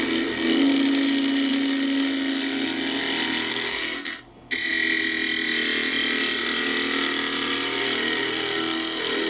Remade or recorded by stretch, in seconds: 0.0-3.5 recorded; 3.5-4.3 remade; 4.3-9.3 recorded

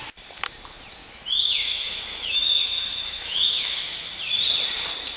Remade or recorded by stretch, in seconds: 0.0-1.0 recorded; 1.0-4.1 remade; 4.1-5.2 recorded

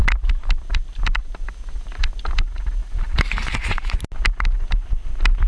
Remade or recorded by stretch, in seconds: 0.0-0.6 remade; 0.6-2.8 recorded; 2.8-4.0 remade; 4.0-5.5 recorded

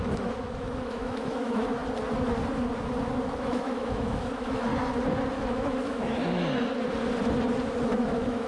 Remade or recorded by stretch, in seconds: 0.0-1.8 remade; 1.8-3.2 recorded; 3.2-4.7 remade; 4.7-5.3 recorded; 5.3-6.2 remade; 6.2-7.8 recorded; 7.8-8.5 remade